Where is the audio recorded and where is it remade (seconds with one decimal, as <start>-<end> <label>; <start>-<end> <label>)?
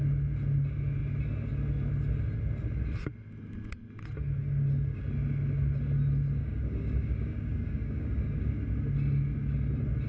0.0-4.4 recorded; 4.4-5.0 remade; 5.0-6.4 recorded; 6.4-8.4 remade; 8.4-10.1 recorded